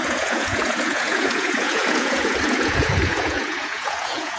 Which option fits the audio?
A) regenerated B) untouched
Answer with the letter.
A